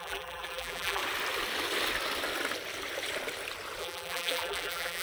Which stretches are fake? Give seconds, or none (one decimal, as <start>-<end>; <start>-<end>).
0.0-1.0; 3.8-5.0